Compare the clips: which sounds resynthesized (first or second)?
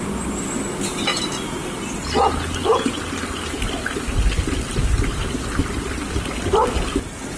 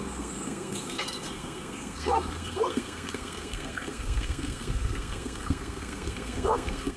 second